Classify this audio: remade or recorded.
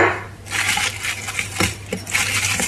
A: recorded